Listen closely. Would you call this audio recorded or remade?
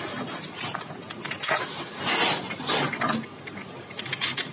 recorded